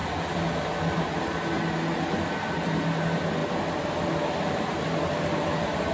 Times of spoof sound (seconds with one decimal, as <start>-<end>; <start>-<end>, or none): none